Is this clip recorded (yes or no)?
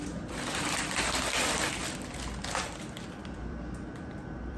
no